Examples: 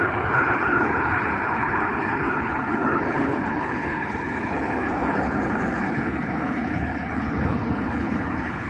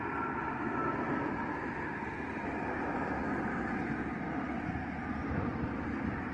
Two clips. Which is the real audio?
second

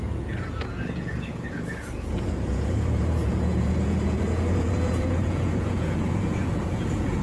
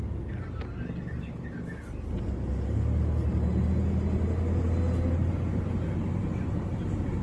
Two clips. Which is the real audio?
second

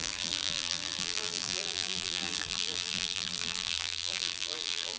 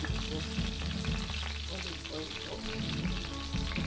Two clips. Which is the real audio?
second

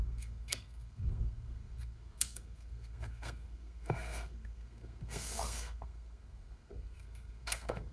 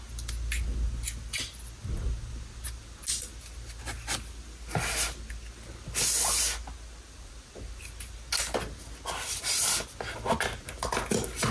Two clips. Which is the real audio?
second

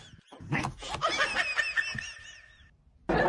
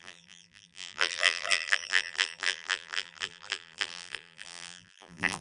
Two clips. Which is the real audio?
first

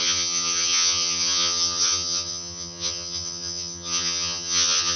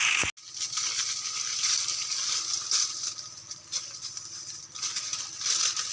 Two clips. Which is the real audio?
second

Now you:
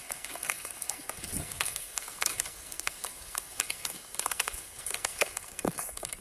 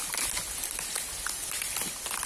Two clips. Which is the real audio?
second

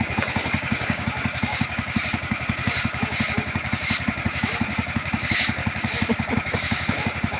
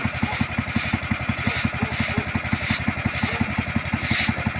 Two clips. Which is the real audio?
second